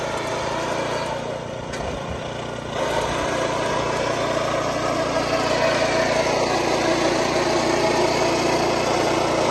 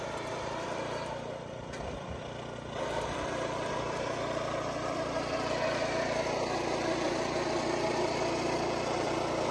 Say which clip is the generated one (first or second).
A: second